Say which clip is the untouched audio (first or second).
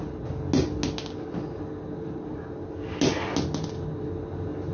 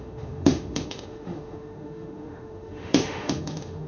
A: first